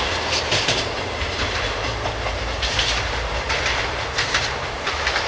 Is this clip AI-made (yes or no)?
yes